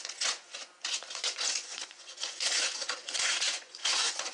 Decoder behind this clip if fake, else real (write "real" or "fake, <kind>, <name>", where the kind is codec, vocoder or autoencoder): fake, vocoder, Vocos